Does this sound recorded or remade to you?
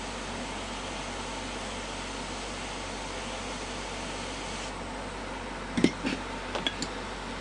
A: recorded